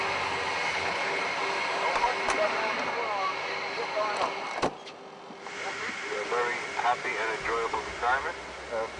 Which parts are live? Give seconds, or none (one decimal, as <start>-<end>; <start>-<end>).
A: 0.0-0.7; 1.2-9.0